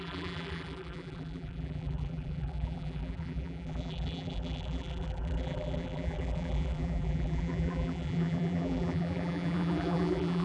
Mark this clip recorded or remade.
remade